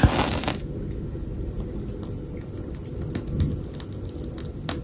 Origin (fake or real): real